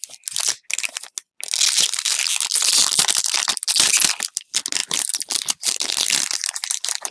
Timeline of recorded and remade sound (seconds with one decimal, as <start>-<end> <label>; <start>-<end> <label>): 0.0-7.1 recorded